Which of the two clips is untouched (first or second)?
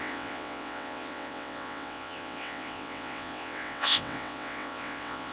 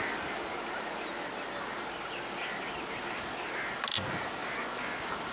second